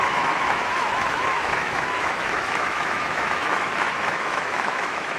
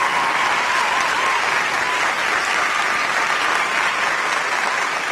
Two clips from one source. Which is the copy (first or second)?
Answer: first